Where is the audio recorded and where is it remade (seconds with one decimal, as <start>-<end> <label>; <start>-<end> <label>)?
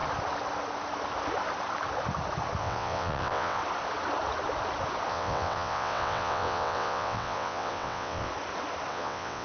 0.0-2.6 recorded; 2.6-3.6 remade; 3.6-5.1 recorded; 5.1-8.3 remade; 8.3-8.9 recorded; 8.9-9.4 remade